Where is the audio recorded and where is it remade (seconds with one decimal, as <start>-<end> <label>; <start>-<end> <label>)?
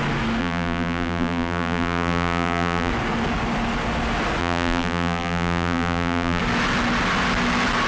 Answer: 0.0-0.4 recorded; 0.4-2.9 remade; 2.9-4.4 recorded; 4.4-6.4 remade; 6.4-7.9 recorded